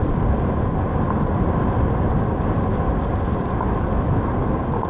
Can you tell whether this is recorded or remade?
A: recorded